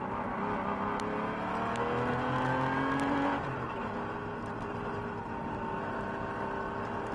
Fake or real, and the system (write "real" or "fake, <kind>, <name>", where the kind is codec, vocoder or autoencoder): real